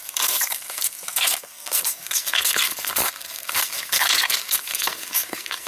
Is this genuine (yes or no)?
no